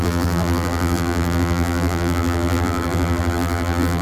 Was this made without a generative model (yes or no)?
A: no